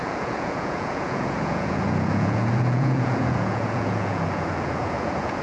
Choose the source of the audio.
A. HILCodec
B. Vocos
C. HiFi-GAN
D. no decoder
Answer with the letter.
B